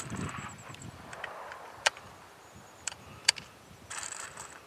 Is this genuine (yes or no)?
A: no